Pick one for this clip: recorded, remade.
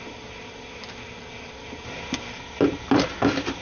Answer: recorded